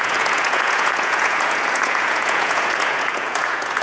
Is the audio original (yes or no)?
no